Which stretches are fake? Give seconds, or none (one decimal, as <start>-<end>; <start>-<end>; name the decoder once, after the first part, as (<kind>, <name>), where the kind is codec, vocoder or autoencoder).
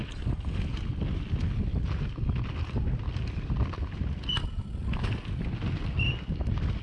none